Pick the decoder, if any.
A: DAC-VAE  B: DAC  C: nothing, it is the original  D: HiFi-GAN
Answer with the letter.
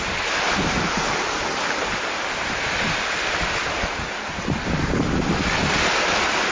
C